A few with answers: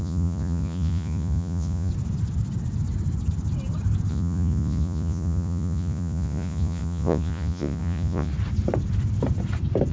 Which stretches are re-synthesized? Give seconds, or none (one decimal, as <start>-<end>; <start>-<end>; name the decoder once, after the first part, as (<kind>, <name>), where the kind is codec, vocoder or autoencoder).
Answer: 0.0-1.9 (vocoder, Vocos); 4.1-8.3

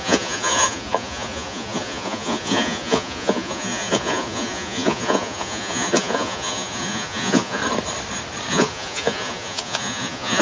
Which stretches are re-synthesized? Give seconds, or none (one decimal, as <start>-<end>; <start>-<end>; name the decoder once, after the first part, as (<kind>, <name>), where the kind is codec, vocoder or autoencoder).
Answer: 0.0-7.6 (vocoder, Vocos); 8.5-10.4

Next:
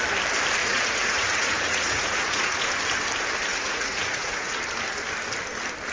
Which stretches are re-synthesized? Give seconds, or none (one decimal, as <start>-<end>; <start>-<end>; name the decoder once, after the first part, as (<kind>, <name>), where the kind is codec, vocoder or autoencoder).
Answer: 0.6-2.7 (vocoder, Vocos); 3.5-4.5

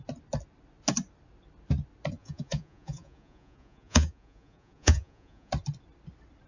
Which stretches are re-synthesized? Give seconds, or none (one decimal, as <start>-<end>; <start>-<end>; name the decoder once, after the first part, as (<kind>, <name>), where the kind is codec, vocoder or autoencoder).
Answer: 2.2-5.5 (vocoder, Vocos)

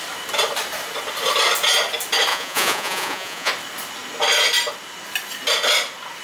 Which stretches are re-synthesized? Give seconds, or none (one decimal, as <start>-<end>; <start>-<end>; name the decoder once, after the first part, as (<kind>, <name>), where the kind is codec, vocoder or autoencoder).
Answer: 2.3-3.5 (vocoder, Vocos)

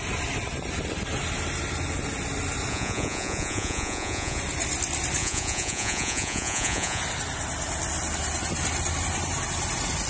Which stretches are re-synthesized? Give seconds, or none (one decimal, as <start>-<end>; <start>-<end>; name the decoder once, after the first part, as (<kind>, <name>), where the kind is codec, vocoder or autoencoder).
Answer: 2.7-4.4 (vocoder, Vocos); 5.2-7.0